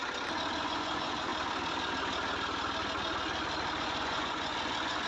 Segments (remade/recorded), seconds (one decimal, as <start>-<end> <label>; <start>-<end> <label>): 0.0-0.6 recorded; 0.6-1.3 remade; 1.3-3.8 recorded; 3.8-5.1 remade